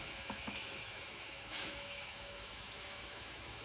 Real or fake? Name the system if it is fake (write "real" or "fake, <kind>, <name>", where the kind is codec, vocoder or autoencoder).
fake, autoencoder, DAC-VAE